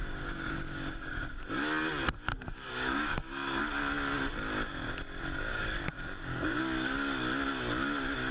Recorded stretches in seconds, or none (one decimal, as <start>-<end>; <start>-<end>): 1.4-2.3; 3.6-5.5; 6.6-8.3